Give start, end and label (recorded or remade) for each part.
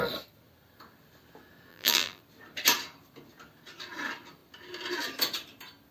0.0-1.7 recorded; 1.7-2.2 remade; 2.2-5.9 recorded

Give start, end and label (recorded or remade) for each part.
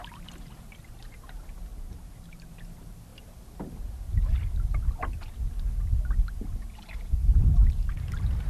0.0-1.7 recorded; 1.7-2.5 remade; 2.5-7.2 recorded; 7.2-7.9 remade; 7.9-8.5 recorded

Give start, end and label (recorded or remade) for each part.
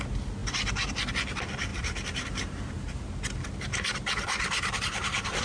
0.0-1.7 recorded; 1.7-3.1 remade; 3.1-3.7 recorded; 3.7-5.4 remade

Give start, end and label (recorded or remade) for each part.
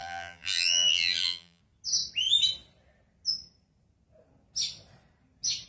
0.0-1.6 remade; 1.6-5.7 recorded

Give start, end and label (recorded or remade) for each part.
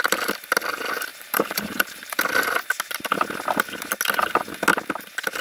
0.0-1.1 recorded; 1.1-2.2 remade; 2.2-5.4 recorded